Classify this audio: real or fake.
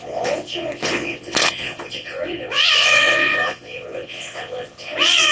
fake